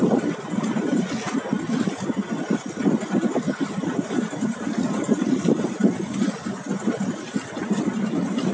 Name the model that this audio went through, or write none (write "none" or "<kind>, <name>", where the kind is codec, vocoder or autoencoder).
none